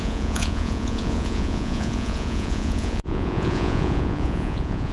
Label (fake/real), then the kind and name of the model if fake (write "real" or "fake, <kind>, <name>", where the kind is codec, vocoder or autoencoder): fake, vocoder, Vocos